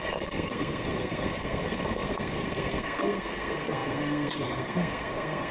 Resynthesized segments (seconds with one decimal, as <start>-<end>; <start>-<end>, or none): 0.0-5.5

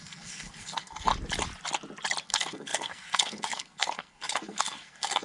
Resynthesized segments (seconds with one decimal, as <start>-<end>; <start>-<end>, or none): 0.0-1.1; 2.2-5.2